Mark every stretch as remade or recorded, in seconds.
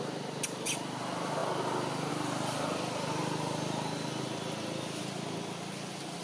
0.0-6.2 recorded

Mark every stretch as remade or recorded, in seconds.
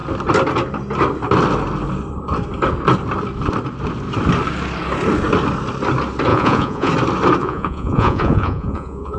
0.0-6.3 recorded; 6.3-6.9 remade; 6.9-7.4 recorded; 7.4-9.2 remade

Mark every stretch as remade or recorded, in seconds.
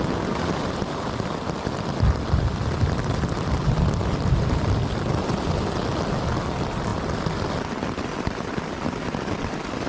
0.0-9.9 recorded